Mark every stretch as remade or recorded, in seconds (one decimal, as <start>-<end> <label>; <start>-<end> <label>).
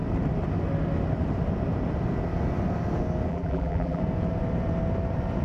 0.0-3.3 recorded; 3.3-4.0 remade; 4.0-5.4 recorded